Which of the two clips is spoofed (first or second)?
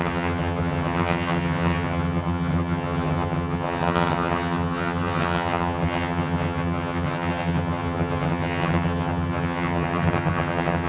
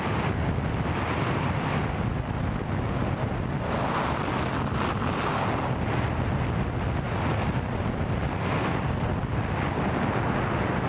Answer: first